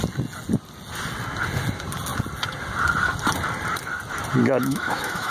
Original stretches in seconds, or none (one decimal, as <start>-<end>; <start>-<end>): 0.0-4.4